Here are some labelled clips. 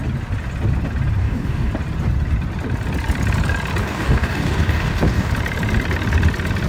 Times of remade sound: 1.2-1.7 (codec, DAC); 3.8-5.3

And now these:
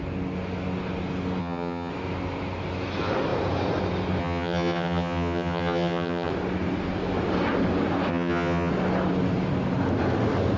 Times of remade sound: 1.4-1.9 (vocoder, HiFi-GAN); 4.2-6.3; 8.1-8.7